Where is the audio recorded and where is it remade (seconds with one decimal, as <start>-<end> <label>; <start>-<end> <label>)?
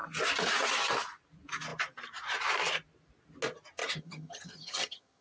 0.0-3.8 recorded; 3.8-5.2 remade